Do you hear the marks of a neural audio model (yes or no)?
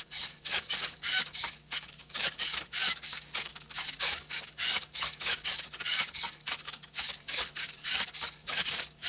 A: yes